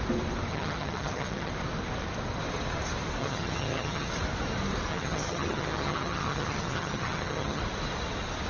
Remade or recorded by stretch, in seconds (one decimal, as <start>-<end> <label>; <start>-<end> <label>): 0.0-0.5 recorded; 0.5-1.5 remade; 1.5-3.2 recorded; 3.2-4.1 remade; 4.1-4.9 recorded; 4.9-7.6 remade; 7.6-8.5 recorded